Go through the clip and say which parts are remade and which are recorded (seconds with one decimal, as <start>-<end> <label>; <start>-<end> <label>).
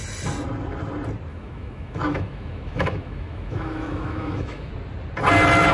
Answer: 0.0-1.3 recorded; 1.3-4.7 remade; 4.7-5.7 recorded